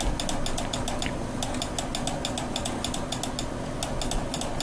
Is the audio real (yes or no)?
yes